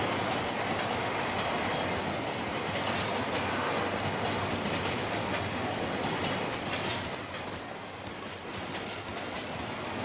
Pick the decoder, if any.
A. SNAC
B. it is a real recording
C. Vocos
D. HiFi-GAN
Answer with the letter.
B